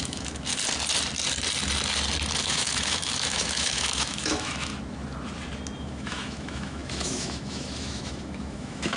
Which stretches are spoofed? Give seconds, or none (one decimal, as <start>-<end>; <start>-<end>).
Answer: 0.0-0.5; 2.4-4.7; 5.8-9.0

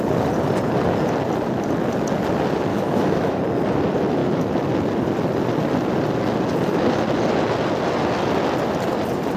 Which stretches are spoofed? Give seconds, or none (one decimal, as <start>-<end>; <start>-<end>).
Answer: 2.7-3.4

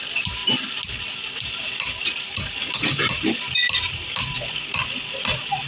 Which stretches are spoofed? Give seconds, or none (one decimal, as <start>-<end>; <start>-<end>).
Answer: none